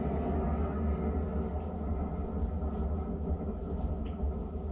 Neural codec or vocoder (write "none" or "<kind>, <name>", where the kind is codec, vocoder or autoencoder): none